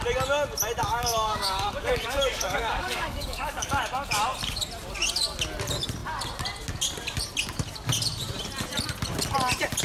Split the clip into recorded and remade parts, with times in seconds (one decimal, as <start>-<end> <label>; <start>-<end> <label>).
0.0-0.8 recorded; 0.8-4.2 remade; 4.2-9.8 recorded